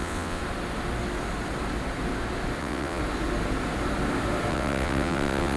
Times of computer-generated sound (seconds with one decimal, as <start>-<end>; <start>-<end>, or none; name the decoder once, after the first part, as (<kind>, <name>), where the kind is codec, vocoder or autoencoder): 0.0-0.4 (vocoder, WaveNeXt); 2.6-3.0; 4.5-5.6